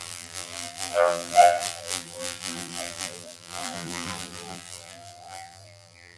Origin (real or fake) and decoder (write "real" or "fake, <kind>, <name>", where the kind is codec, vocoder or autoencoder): fake, vocoder, BigVGAN v2